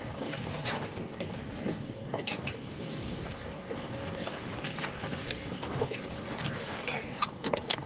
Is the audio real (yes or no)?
no